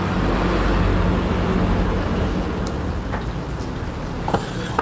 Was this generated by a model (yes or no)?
no